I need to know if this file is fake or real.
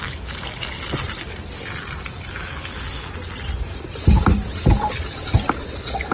real